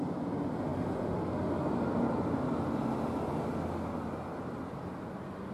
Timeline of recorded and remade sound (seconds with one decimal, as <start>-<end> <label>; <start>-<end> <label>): 0.0-5.5 recorded